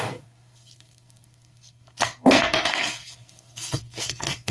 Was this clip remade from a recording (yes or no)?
yes